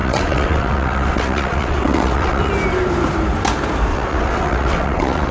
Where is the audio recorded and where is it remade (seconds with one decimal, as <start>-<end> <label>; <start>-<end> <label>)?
0.0-2.5 remade; 2.5-3.9 recorded; 3.9-5.3 remade